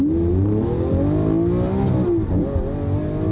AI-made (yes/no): no